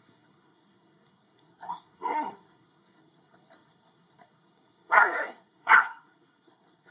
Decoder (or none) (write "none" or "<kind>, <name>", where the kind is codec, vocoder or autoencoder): codec, SNAC